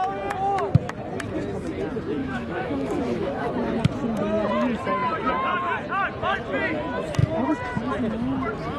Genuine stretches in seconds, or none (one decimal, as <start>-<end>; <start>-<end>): 0.0-2.2; 3.5-8.8